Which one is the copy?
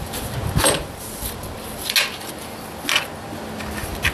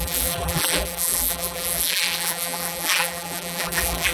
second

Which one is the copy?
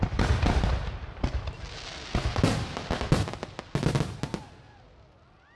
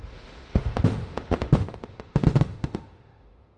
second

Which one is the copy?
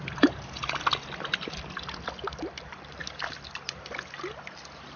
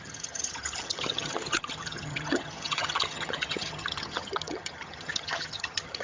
second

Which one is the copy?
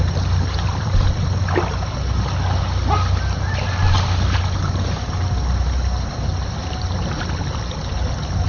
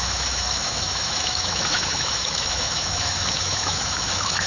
second